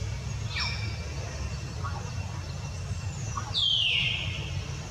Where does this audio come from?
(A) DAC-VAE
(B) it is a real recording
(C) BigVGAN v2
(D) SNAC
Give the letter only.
B